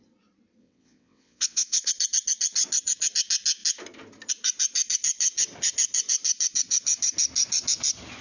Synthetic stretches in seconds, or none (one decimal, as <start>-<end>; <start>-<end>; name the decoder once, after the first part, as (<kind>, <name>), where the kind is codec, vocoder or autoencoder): 0.6-1.9 (vocoder, WaveNeXt)